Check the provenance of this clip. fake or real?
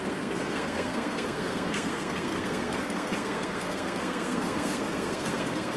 fake